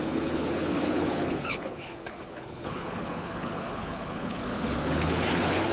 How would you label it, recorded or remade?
remade